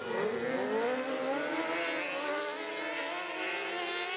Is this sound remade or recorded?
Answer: recorded